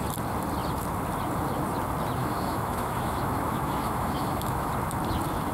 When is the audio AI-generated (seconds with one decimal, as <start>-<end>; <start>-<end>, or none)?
2.2-4.7